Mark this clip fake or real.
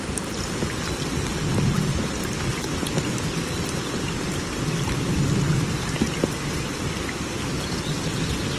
real